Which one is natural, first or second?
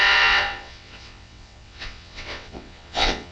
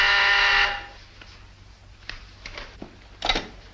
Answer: second